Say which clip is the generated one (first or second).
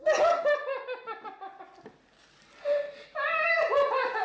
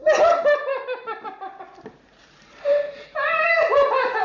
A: second